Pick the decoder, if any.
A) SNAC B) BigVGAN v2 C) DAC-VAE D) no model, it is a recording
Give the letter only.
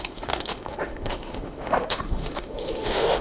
C